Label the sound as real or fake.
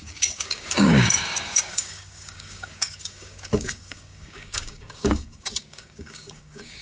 fake